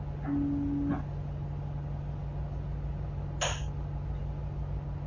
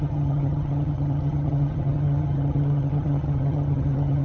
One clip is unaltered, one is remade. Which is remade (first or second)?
second